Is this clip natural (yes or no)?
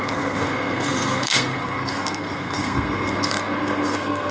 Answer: no